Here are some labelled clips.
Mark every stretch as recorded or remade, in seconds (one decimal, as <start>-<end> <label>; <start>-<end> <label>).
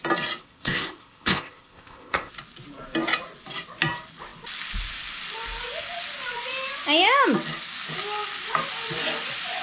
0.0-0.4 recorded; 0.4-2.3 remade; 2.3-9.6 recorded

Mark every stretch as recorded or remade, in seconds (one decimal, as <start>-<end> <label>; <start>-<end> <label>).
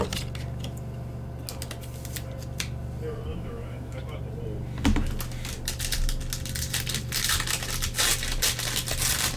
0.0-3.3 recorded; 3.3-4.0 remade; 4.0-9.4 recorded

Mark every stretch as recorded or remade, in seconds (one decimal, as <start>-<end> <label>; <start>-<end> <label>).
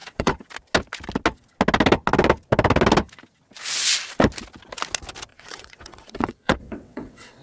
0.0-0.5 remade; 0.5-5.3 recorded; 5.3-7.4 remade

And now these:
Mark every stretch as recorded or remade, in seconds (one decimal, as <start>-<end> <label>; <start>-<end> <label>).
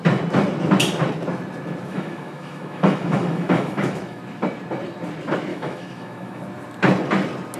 0.0-1.9 recorded; 1.9-4.2 remade; 4.2-5.5 recorded; 5.5-6.4 remade; 6.4-7.6 recorded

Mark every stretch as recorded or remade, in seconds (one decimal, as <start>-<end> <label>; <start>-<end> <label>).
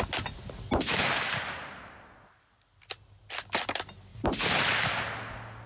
0.0-5.7 recorded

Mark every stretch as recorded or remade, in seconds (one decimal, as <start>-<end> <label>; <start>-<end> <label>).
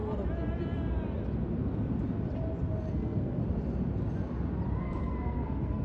0.0-2.9 recorded; 2.9-3.4 remade; 3.4-4.8 recorded; 4.8-5.8 remade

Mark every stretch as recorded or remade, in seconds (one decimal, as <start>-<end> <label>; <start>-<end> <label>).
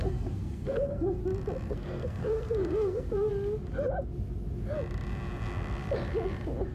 0.0-1.2 remade; 1.2-1.7 recorded; 1.7-3.3 remade; 3.3-6.7 recorded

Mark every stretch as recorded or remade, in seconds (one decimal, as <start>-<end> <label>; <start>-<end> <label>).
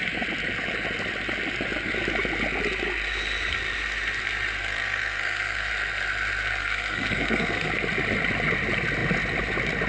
0.0-4.6 recorded; 4.6-5.7 remade; 5.7-6.6 recorded; 6.6-7.7 remade; 7.7-9.9 recorded